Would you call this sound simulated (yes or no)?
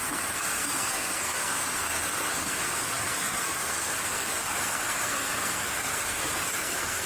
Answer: yes